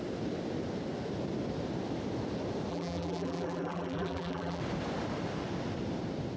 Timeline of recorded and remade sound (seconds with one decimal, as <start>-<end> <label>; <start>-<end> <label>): 0.0-2.7 recorded; 2.7-4.6 remade; 4.6-6.4 recorded